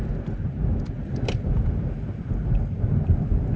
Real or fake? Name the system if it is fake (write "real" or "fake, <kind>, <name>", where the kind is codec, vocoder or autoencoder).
fake, vocoder, BigVGAN v2